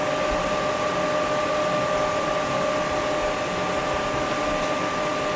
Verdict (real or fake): real